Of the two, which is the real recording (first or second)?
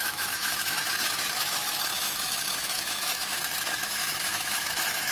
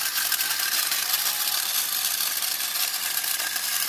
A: second